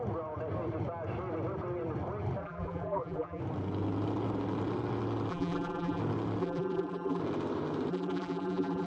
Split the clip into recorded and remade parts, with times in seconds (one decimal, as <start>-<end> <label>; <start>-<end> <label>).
0.0-2.4 recorded; 2.4-3.4 remade; 3.4-5.3 recorded; 5.3-6.0 remade; 6.0-6.4 recorded; 6.4-7.2 remade; 7.2-7.9 recorded; 7.9-8.9 remade